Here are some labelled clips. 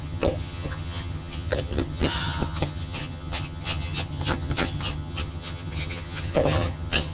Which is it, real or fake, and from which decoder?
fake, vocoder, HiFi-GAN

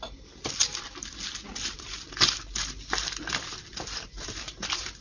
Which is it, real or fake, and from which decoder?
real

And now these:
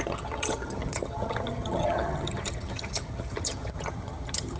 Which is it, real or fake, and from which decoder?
fake, vocoder, HiFi-GAN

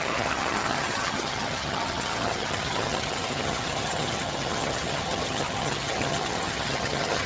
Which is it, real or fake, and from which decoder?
fake, vocoder, HiFi-GAN